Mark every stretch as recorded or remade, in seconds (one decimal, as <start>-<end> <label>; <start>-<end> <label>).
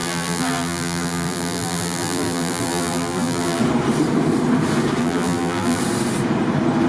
0.0-3.6 remade; 3.6-5.0 recorded; 5.0-5.8 remade; 5.8-6.9 recorded